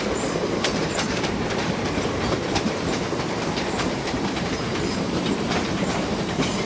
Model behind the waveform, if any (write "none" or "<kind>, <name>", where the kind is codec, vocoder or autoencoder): vocoder, BigVGAN v2